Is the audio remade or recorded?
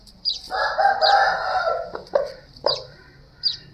remade